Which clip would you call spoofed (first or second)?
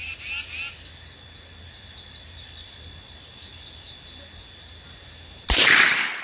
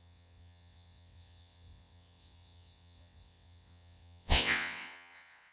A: second